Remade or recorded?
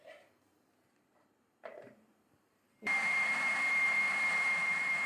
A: remade